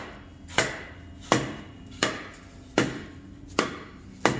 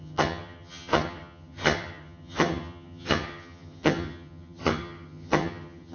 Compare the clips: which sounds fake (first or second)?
second